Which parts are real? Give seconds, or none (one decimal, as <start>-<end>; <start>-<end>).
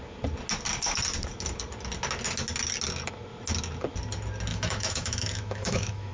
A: 0.0-4.5